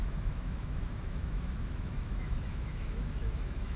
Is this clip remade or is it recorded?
remade